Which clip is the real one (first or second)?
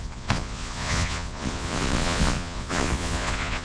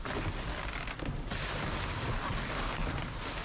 second